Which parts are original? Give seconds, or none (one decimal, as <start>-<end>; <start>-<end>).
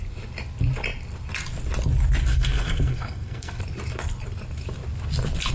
0.0-2.3; 3.6-5.5